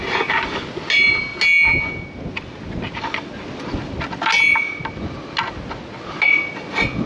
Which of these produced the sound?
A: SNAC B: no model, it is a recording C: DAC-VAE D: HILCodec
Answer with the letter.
B